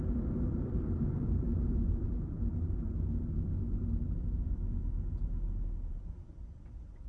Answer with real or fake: fake